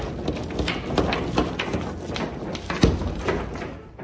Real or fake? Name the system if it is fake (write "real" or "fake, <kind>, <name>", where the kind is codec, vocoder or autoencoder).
real